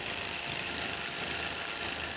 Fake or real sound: real